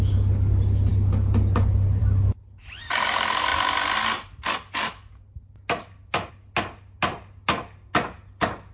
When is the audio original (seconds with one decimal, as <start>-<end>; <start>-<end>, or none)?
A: 0.0-8.7